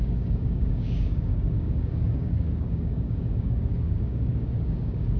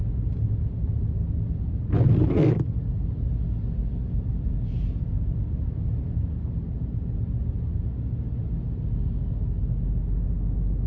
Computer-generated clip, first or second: first